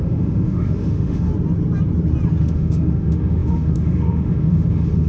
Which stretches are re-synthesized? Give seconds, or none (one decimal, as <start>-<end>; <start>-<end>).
0.0-1.3; 2.4-5.1